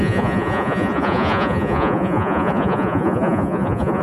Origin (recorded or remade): remade